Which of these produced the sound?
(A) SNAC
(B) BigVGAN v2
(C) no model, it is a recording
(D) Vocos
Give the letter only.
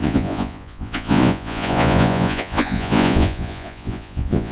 D